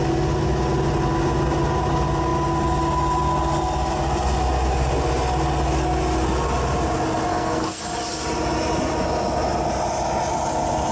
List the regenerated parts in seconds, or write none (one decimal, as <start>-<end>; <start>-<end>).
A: 7.3-7.8